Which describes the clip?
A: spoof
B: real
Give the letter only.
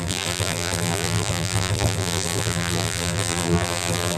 A